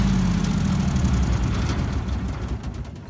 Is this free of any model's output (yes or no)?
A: yes